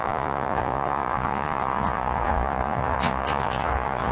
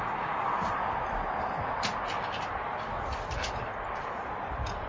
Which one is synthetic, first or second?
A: first